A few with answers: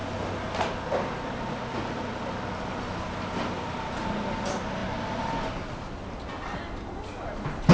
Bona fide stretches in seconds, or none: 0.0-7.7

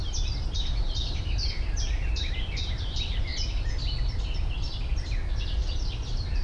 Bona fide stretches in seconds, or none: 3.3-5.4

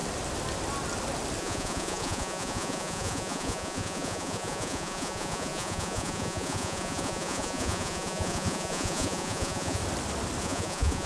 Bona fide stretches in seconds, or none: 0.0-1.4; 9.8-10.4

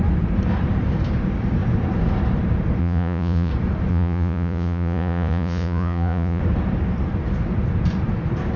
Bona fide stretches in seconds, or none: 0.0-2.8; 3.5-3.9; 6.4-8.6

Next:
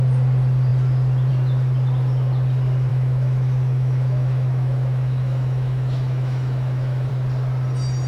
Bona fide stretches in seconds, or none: 0.0-2.9; 7.1-8.1

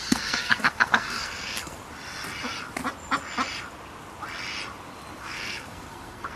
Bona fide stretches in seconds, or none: 1.8-5.2